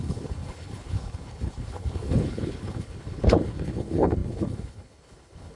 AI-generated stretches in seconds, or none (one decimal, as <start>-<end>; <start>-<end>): 0.0-5.6